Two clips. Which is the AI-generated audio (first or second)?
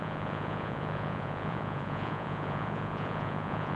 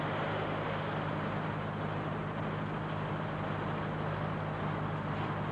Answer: first